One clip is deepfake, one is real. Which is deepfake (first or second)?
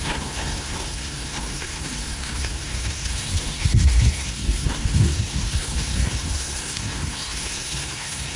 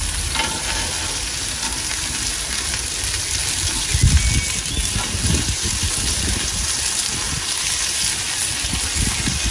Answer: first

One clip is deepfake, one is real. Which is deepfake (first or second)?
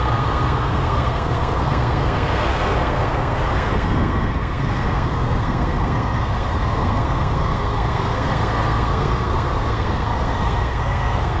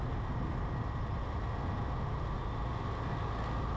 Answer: first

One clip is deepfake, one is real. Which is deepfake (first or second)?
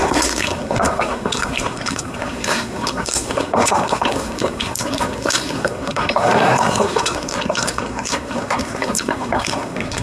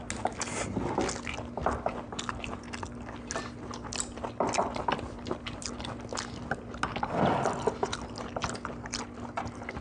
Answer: first